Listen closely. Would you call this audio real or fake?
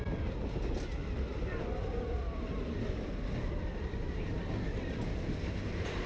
real